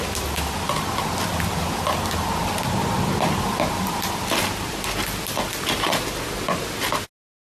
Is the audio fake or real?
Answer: real